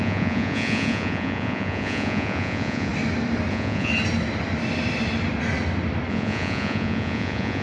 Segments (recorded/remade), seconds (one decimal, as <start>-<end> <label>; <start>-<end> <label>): 0.0-2.9 remade; 2.9-3.5 recorded; 3.5-3.9 remade; 3.9-6.1 recorded; 6.1-7.6 remade